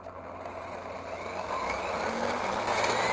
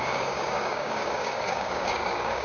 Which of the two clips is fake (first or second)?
second